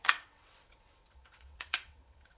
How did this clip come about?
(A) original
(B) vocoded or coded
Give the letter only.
B